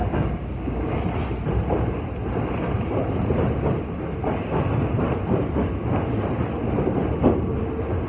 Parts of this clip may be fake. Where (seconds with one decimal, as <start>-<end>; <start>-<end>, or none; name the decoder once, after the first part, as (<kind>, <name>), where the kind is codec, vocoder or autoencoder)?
0.0-1.0 (codec, DAC)